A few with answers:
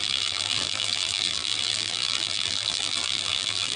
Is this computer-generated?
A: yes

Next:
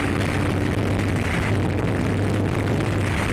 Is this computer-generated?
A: no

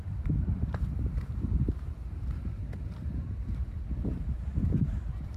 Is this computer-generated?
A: yes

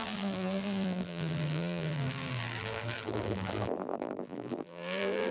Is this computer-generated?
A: yes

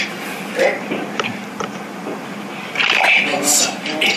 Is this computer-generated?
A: no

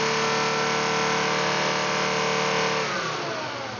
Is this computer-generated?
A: no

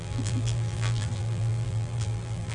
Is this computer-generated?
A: yes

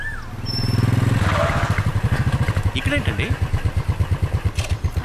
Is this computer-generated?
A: no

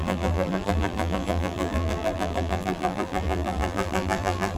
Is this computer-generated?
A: yes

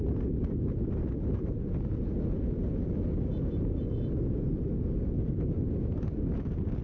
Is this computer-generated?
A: no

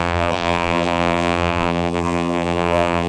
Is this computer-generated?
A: yes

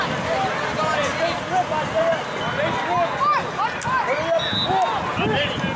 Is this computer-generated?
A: no